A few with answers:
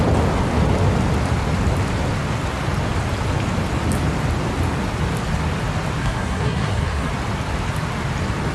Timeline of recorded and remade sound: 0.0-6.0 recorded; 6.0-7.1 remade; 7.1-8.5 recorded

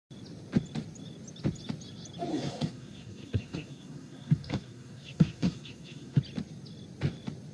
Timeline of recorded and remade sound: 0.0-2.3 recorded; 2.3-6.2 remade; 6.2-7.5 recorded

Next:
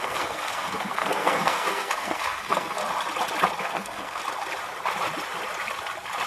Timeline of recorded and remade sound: 0.0-2.8 remade; 2.8-3.6 recorded; 3.6-4.2 remade; 4.2-6.3 recorded

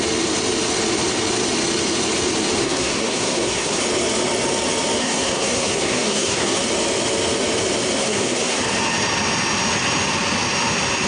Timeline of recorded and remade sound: 0.0-2.6 recorded; 2.6-3.8 remade; 3.8-5.0 recorded; 5.0-6.6 remade; 6.6-8.0 recorded; 8.0-8.6 remade; 8.6-11.1 recorded

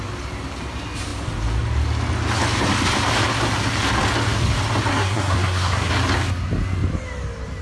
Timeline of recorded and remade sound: 0.0-4.9 recorded; 4.9-5.9 remade; 5.9-7.6 recorded